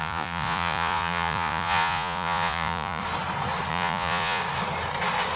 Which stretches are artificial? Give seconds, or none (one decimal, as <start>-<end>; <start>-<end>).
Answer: 0.0-3.0; 3.7-4.4